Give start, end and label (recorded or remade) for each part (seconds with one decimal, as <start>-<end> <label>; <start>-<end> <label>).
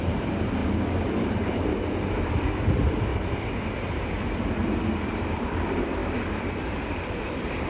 0.0-0.6 remade; 0.6-2.6 recorded; 2.6-3.1 remade; 3.1-5.0 recorded; 5.0-7.7 remade